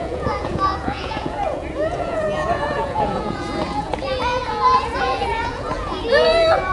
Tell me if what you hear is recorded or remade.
remade